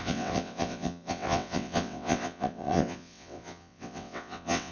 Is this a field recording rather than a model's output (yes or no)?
no